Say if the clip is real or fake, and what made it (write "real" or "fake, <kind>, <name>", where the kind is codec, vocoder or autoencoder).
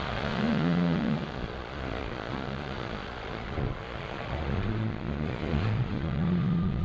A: fake, vocoder, Vocos